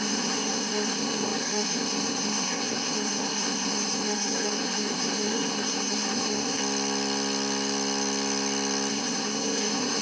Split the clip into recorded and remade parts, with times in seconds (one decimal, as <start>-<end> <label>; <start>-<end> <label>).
0.0-6.6 remade; 6.6-8.9 recorded; 8.9-10.0 remade